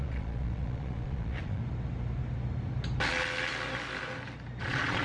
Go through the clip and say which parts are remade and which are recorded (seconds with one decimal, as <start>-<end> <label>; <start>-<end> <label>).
0.0-1.6 remade; 1.6-4.6 recorded; 4.6-5.0 remade